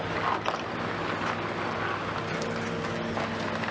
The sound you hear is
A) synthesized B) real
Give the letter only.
B